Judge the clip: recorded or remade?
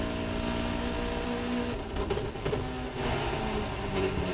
recorded